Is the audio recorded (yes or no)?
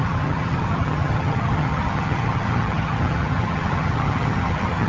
no